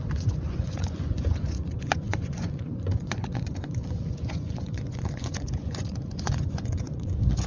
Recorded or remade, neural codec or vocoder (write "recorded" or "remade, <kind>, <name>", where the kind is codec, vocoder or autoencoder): remade, vocoder, Vocos